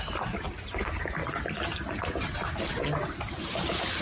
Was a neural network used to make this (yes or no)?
no